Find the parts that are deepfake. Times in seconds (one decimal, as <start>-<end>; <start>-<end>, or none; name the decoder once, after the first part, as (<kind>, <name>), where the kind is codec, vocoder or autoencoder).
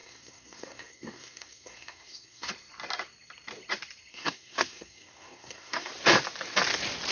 0.0-2.5 (codec, SNAC); 4.1-5.9